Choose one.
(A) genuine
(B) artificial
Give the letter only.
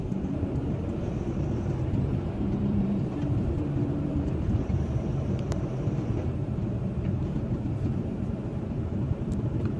B